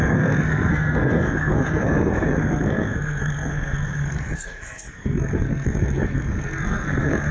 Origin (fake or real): fake